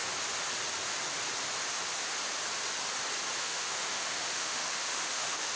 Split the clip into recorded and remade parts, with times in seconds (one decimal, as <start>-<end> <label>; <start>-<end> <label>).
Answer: 0.0-3.4 recorded; 3.4-5.6 remade